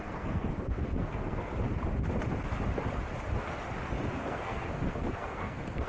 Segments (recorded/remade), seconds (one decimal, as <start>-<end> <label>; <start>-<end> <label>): 0.0-1.5 remade; 1.5-4.1 recorded; 4.1-5.9 remade